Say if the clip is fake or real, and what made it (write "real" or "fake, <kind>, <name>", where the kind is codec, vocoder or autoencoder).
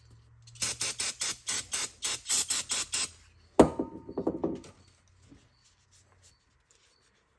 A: real